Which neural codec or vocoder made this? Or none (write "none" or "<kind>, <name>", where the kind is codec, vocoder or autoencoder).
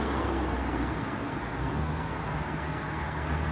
codec, SNAC